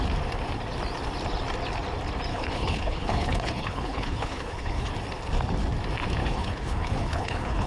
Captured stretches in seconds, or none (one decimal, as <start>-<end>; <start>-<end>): 0.0-2.3; 4.9-6.2